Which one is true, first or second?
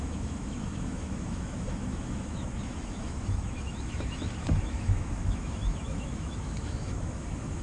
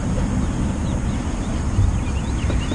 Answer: second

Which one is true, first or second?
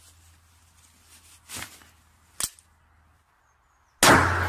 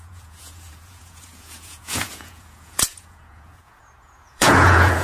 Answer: first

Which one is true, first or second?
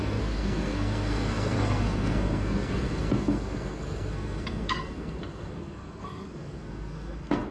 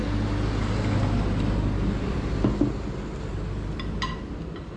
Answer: second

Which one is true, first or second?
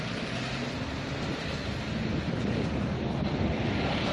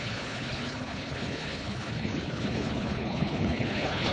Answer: first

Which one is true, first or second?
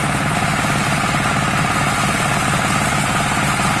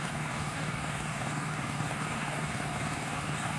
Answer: first